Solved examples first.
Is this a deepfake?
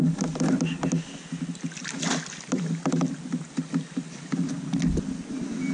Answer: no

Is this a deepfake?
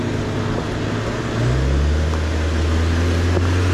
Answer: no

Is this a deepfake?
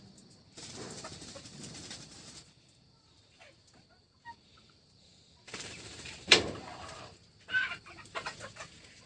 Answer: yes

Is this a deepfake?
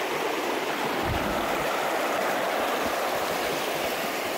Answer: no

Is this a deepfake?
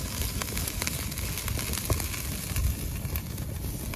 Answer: no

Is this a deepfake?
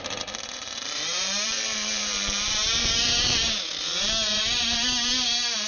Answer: yes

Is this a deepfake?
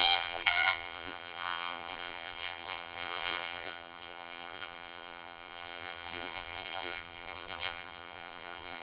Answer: yes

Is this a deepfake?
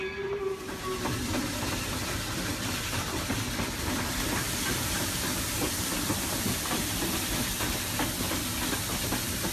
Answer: yes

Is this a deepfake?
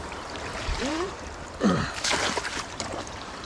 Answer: yes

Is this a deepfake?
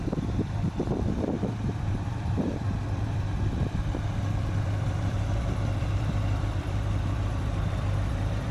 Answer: yes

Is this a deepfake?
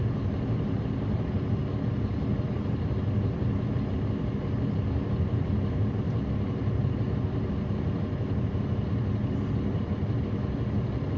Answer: no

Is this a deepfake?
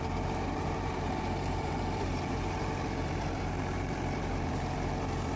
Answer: yes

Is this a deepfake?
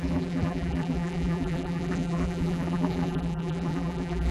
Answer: yes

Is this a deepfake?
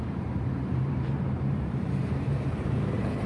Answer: yes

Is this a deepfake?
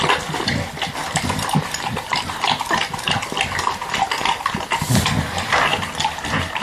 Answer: no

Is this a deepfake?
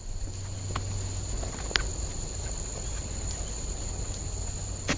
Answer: no